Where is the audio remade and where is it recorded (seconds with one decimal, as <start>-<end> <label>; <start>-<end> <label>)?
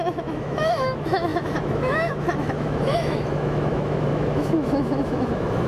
0.0-5.7 remade